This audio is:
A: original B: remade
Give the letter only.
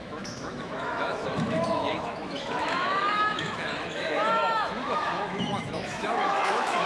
B